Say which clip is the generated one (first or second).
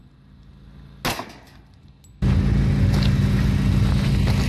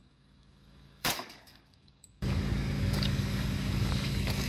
second